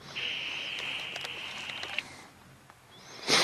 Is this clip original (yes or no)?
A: yes